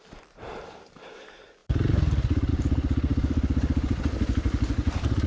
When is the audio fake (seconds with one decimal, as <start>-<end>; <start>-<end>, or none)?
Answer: 0.0-1.6; 2.5-5.3